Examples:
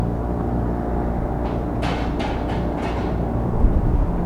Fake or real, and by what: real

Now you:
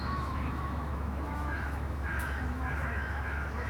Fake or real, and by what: fake, autoencoder, DAC-VAE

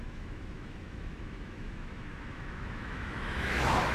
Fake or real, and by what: fake, autoencoder, DAC-VAE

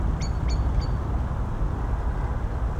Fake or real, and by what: real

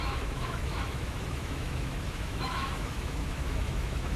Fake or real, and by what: fake, autoencoder, DAC-VAE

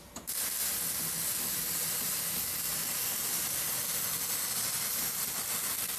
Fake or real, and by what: real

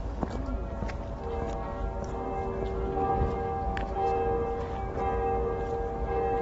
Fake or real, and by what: real